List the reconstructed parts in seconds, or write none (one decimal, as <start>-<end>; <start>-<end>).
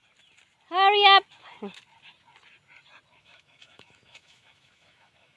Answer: 3.2-5.4